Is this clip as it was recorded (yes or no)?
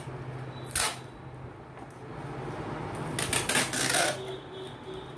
yes